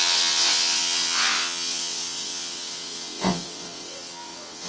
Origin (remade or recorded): remade